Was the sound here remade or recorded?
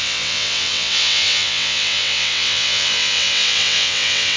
remade